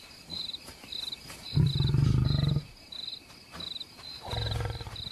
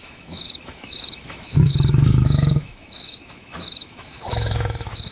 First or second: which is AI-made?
second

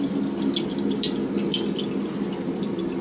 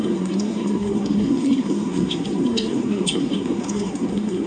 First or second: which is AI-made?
second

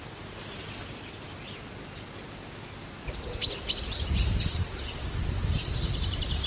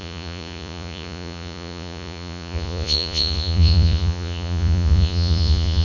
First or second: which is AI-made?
second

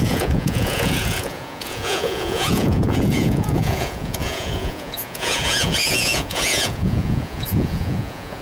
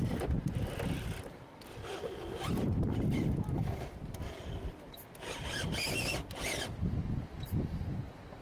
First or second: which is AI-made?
first